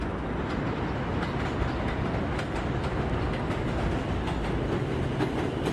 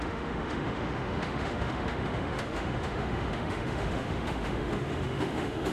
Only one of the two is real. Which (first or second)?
first